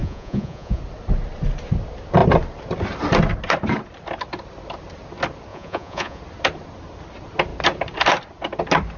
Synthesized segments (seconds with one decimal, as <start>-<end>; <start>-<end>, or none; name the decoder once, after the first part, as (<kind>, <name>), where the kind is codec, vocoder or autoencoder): 0.0-0.8 (vocoder, Vocos); 5.5-6.2